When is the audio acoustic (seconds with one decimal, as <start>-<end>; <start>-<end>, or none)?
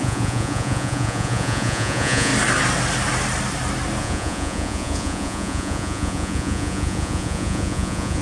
2.3-4.0